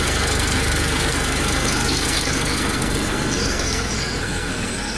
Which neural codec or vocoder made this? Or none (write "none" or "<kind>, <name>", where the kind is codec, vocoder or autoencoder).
codec, SNAC